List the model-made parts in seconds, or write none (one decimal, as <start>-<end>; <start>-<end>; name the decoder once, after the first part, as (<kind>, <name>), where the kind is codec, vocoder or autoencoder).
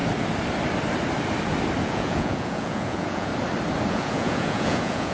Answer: 1.8-3.3 (vocoder, Vocos); 3.9-5.1